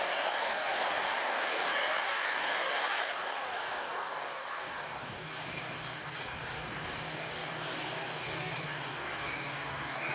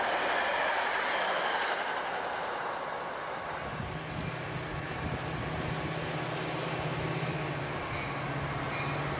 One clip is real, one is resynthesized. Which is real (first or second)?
second